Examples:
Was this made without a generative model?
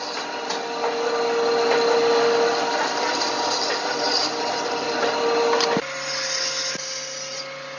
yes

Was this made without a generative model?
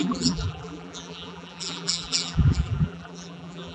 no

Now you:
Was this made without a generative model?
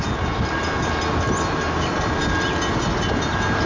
yes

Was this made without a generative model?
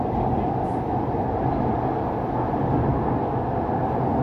yes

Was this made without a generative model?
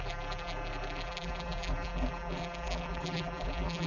no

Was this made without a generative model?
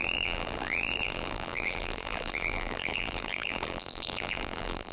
no